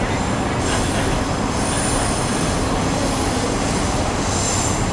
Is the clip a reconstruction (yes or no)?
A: no